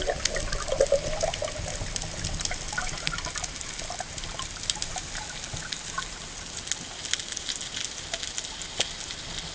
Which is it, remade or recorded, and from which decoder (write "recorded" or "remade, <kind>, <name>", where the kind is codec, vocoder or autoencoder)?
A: recorded